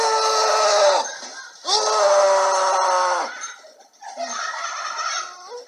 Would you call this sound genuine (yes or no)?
yes